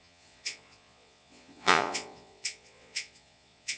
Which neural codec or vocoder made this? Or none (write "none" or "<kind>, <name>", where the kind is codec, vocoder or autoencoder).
vocoder, Vocos